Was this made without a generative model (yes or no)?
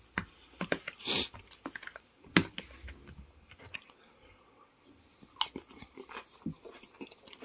yes